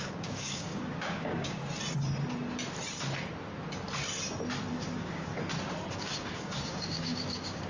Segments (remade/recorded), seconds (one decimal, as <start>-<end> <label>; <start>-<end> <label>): 0.0-1.6 remade; 1.6-4.7 recorded; 4.7-5.3 remade; 5.3-5.9 recorded; 5.9-7.7 remade